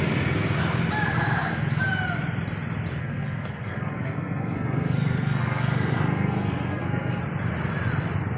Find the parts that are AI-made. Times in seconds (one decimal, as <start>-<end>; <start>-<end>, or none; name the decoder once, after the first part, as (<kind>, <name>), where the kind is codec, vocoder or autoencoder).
3.0-7.2 (codec, SNAC)